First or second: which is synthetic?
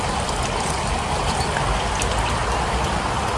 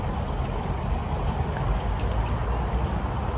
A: first